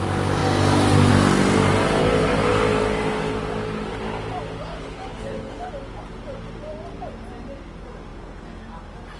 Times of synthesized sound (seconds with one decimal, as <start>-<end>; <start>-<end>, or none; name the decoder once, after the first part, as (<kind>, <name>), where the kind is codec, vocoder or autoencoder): 4.7-5.7 (codec, HILCodec)